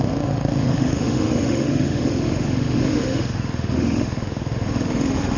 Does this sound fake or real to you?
fake